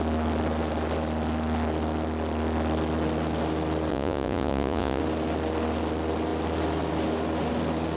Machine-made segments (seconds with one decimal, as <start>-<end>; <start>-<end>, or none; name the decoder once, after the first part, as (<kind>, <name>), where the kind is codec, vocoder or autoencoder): 3.9-5.0 (vocoder, Vocos)